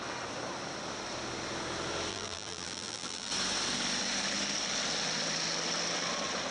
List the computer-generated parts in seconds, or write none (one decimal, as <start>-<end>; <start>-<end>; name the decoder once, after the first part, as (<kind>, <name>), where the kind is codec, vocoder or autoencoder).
2.1-3.3 (vocoder, BigVGAN v2)